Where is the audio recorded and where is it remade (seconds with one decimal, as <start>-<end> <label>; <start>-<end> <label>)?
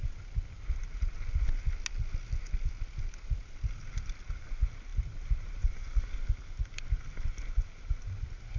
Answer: 0.0-8.6 recorded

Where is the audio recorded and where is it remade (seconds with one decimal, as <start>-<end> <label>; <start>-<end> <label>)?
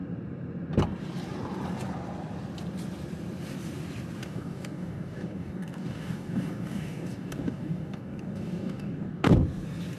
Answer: 0.0-4.2 recorded; 4.2-9.3 remade; 9.3-10.0 recorded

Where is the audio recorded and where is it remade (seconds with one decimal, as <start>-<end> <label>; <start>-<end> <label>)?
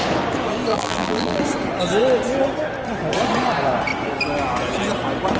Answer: 0.0-0.7 recorded; 0.7-1.4 remade; 1.4-5.4 recorded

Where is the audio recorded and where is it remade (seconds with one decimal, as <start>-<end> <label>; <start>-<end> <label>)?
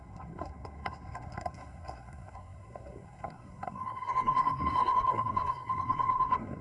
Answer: 0.0-6.6 remade